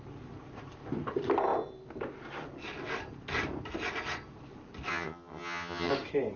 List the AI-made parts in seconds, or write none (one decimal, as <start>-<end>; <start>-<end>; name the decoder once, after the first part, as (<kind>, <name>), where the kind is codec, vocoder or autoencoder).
4.9-5.9 (vocoder, HiFi-GAN)